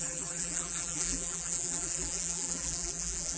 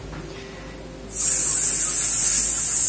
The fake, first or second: first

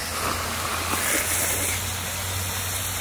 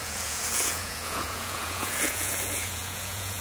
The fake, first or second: second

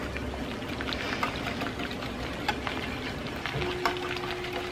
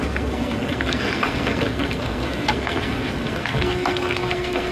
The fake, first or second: second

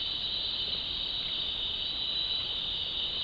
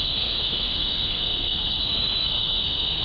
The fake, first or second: second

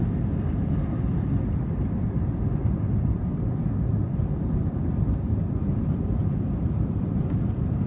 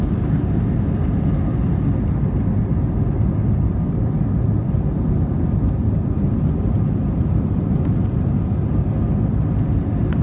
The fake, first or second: first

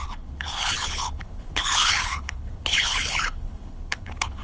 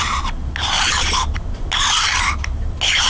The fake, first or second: first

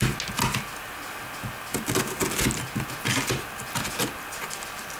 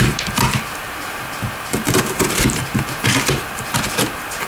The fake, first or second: second